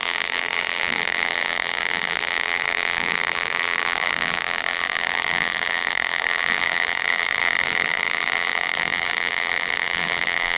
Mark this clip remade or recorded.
remade